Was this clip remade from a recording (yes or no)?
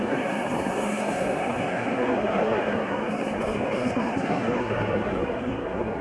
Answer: yes